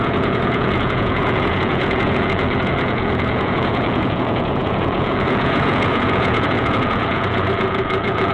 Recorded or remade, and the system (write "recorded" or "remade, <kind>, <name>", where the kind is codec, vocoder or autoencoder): remade, vocoder, Vocos